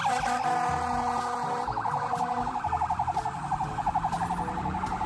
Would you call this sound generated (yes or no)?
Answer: no